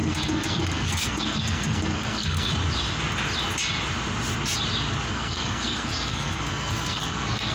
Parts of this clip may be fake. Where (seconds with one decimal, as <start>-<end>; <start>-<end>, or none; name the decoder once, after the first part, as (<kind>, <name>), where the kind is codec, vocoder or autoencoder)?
0.0-2.5 (codec, SNAC); 5.1-7.5